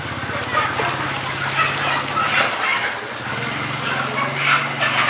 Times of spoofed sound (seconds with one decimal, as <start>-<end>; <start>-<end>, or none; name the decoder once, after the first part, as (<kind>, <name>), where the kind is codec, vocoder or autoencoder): none